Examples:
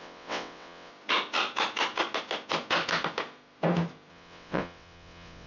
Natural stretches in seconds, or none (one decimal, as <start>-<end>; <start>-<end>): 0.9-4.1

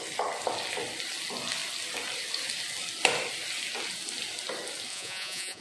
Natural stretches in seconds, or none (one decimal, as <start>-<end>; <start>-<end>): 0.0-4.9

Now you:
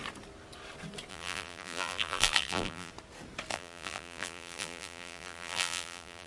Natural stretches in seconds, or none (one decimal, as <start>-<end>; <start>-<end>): 0.0-1.1; 2.9-3.5

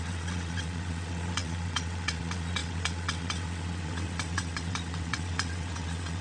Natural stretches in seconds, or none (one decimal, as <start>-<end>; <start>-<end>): none

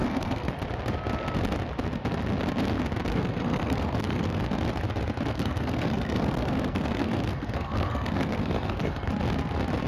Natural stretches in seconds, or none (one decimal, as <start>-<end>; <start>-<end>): 0.5-3.1; 4.4-5.3; 9.1-9.9

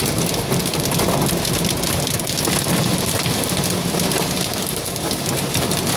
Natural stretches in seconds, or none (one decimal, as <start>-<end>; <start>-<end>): 0.0-4.5; 5.1-6.0